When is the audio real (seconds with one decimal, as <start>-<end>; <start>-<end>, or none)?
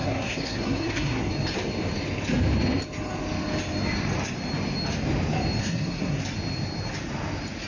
1.3-5.6; 6.2-7.7